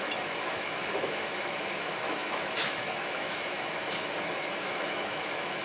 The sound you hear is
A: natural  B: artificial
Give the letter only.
B